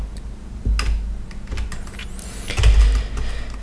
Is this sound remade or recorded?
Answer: recorded